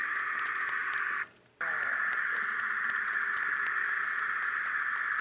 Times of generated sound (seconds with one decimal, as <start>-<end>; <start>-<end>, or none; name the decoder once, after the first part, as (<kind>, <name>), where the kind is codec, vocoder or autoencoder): 0.8-3.7 (vocoder, BigVGAN v2)